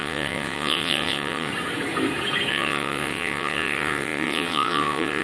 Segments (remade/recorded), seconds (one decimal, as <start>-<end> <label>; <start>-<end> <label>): 0.0-1.5 remade; 1.5-2.5 recorded; 2.5-5.2 remade